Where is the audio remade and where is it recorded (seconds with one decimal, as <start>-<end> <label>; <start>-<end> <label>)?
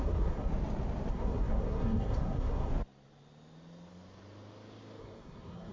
0.0-0.5 remade; 0.5-1.1 recorded; 1.1-2.7 remade; 2.7-5.0 recorded; 5.0-5.7 remade